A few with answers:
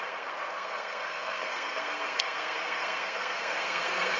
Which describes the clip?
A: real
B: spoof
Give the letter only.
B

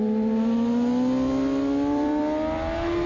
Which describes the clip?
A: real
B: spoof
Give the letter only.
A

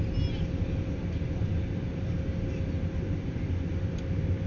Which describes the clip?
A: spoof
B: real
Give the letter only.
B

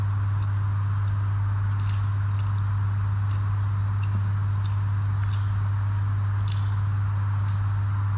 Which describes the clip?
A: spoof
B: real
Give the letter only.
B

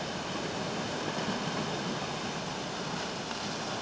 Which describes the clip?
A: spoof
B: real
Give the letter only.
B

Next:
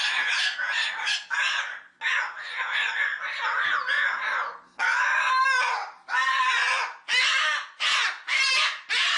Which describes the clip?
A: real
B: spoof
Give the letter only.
A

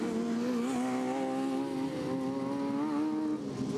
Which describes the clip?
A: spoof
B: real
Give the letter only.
B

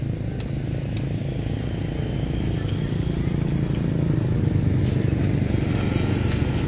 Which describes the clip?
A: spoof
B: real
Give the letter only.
B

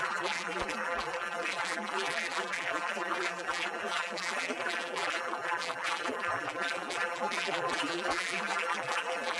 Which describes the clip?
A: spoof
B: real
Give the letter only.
A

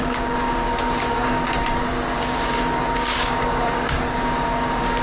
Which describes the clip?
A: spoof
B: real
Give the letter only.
A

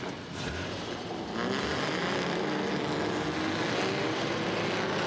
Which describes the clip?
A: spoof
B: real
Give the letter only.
B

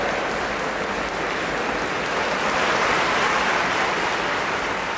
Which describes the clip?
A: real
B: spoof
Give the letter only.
A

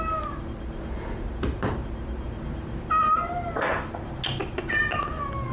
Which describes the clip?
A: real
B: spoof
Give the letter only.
A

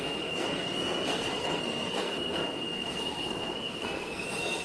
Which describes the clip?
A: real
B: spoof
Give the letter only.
B